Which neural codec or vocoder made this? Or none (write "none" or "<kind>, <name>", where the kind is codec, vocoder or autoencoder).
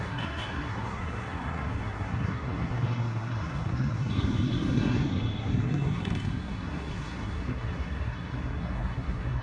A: codec, SNAC